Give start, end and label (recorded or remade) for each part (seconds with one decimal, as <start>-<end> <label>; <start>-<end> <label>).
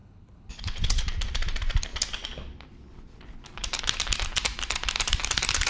0.0-1.0 remade; 1.0-5.7 recorded